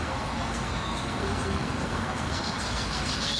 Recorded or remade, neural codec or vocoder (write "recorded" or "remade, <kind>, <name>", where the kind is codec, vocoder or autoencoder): remade, codec, SNAC